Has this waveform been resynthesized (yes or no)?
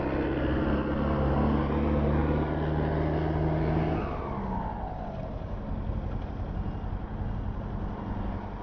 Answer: no